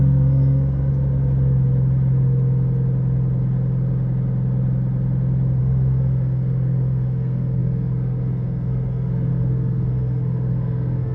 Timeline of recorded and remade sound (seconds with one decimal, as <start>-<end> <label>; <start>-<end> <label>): 0.0-0.9 remade; 0.9-5.6 recorded; 5.6-11.1 remade